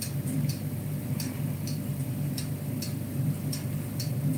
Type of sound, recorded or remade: remade